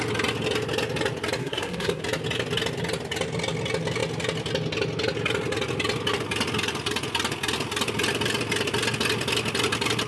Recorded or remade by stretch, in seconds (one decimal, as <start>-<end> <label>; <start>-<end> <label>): 0.0-1.4 recorded; 1.4-2.0 remade; 2.0-10.1 recorded